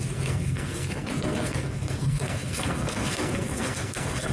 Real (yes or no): no